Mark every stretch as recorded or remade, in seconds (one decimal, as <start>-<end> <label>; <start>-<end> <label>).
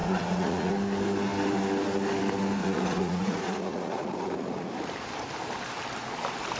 0.0-0.7 remade; 0.7-2.6 recorded; 2.6-4.7 remade; 4.7-6.6 recorded